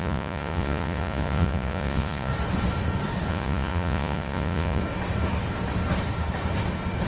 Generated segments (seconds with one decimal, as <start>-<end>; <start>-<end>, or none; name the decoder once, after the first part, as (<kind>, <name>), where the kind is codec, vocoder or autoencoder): 0.0-2.3 (vocoder, Vocos); 3.3-4.8